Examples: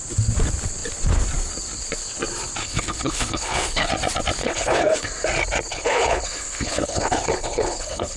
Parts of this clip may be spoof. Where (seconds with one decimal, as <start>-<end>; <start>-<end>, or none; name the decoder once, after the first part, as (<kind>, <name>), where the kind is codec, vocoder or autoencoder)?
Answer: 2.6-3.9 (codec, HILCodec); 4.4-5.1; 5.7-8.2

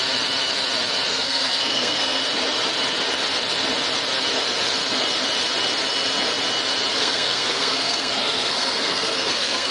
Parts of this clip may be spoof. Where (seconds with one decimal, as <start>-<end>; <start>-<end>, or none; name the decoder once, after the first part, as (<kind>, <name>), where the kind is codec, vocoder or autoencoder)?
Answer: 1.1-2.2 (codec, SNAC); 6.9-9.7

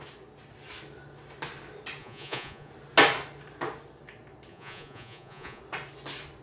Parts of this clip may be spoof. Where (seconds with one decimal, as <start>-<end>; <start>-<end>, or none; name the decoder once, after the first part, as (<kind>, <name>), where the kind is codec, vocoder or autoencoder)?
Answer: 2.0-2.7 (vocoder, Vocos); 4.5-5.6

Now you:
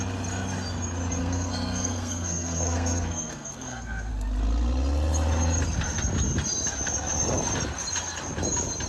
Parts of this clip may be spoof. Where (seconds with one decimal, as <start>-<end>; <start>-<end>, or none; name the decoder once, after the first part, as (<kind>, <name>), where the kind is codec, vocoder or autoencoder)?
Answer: 1.2-4.1 (codec, SNAC)

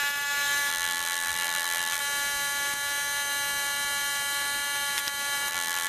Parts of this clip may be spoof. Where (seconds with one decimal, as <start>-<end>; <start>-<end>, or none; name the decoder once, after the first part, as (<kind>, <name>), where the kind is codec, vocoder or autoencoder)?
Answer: 0.7-2.0 (vocoder, BigVGAN v2); 5.5-5.9